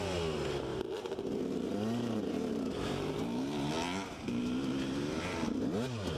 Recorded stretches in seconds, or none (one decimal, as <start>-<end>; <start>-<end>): 0.0-0.7; 3.7-4.4; 5.2-6.2